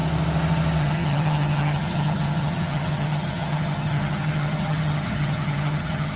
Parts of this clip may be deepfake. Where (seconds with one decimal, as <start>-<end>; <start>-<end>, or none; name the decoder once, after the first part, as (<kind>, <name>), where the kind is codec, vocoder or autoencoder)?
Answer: 0.8-6.2 (vocoder, HiFi-GAN)